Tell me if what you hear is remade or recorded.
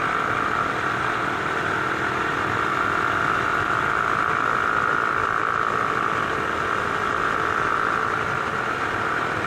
recorded